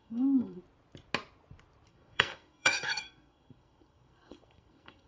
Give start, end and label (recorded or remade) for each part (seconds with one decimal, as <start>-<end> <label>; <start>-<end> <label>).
0.0-0.6 remade; 0.6-1.9 recorded; 1.9-5.1 remade